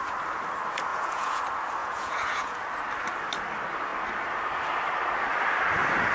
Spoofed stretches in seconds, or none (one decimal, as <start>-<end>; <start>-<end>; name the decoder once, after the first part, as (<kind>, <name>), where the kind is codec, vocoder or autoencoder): 0.9-1.4 (vocoder, Vocos); 1.8-2.6